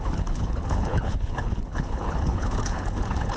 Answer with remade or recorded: remade